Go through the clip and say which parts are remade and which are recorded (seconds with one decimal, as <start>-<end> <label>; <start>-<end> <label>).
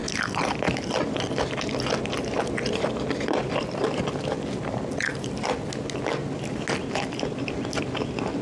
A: 0.0-8.4 recorded